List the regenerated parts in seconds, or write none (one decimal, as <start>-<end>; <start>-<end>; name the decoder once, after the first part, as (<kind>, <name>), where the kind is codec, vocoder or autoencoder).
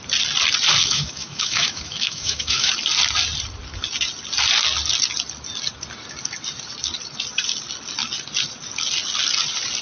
0.8-2.7 (autoencoder, DAC-VAE)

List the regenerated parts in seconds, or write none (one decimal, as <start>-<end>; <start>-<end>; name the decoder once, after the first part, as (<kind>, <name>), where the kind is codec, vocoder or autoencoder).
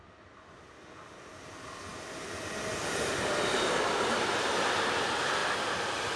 none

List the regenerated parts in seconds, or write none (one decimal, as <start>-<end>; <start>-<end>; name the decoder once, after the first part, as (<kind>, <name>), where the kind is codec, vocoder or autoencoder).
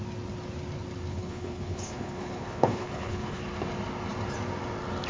1.1-3.4 (codec, HILCodec)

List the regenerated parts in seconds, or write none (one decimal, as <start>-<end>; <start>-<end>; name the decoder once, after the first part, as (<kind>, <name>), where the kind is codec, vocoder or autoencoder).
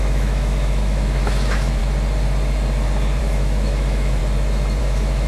0.0-1.8 (autoencoder, DAC-VAE); 3.2-4.2; 4.8-5.3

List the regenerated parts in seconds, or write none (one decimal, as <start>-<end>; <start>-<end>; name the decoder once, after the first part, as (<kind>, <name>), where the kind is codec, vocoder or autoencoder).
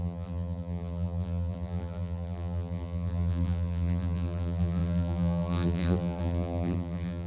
0.0-7.3 (vocoder, BigVGAN v2)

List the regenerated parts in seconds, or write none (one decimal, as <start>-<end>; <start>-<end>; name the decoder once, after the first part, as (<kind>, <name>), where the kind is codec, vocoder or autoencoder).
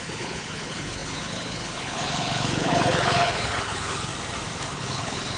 0.0-4.1 (codec, HILCodec); 4.7-5.4